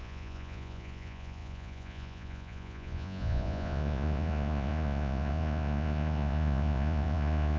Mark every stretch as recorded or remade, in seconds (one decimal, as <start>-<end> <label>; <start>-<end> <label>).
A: 0.0-7.6 remade